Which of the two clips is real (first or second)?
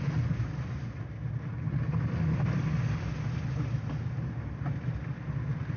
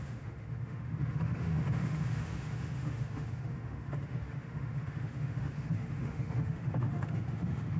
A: first